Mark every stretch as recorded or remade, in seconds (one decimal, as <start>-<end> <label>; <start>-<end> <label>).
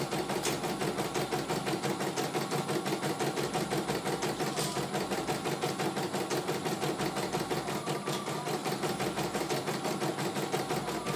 0.0-8.6 recorded; 8.6-9.5 remade; 9.5-11.2 recorded